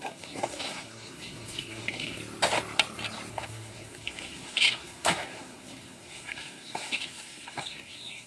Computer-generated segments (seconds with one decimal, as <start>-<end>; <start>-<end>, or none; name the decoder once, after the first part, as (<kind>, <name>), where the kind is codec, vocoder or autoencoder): 0.0-2.2 (codec, SNAC); 3.3-8.3